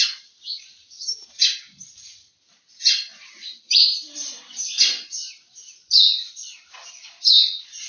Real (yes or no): no